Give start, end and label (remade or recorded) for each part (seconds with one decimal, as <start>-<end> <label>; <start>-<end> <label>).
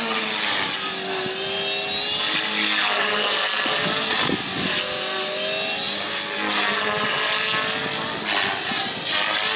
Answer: 0.0-9.6 recorded